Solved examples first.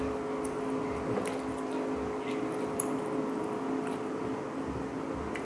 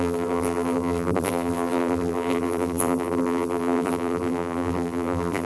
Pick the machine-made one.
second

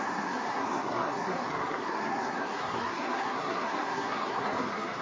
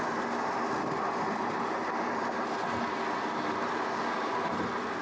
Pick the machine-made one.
first